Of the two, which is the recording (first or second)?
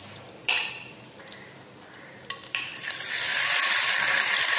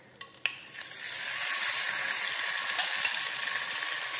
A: second